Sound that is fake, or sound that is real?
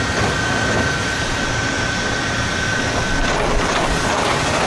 real